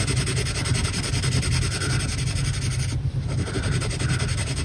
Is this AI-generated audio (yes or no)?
no